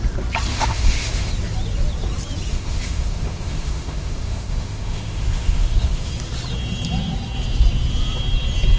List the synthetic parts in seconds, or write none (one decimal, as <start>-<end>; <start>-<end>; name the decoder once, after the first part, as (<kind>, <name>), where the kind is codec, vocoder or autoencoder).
0.5-1.3 (autoencoder, DAC-VAE); 2.5-6.1